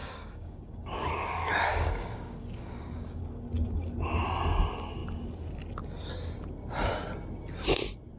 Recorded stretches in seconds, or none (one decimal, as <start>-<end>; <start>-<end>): 3.2-8.2